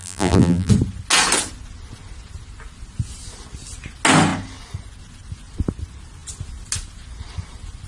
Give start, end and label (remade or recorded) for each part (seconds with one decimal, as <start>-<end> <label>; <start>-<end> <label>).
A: 0.0-0.7 remade; 0.7-7.9 recorded